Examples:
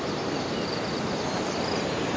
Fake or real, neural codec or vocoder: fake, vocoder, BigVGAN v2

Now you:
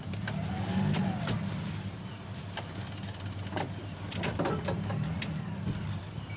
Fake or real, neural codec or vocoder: real